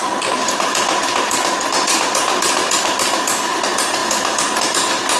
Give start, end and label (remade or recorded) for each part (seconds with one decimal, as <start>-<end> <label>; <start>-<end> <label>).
0.0-5.2 recorded